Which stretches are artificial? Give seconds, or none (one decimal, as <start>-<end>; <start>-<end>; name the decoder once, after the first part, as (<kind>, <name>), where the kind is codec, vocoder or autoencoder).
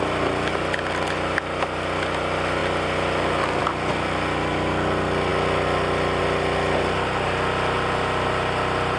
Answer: none